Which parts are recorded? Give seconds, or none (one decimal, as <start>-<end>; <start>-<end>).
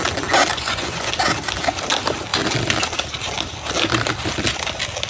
0.0-0.5; 1.1-5.1